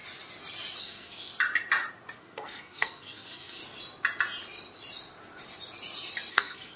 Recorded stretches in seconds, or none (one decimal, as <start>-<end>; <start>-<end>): 0.0-0.8; 1.3-2.2; 3.6-6.3